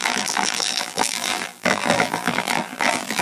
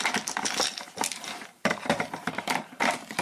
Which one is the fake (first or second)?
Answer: first